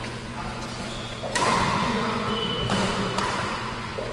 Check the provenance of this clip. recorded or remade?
remade